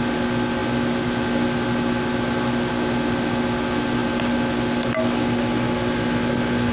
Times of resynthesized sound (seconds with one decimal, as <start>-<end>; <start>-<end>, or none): none